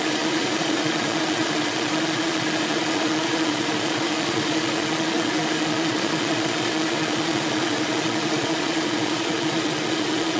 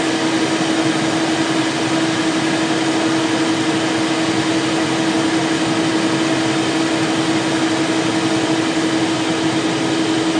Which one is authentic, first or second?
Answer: second